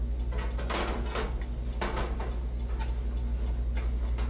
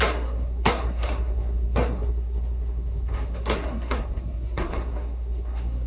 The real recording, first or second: first